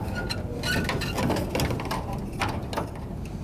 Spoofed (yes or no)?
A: no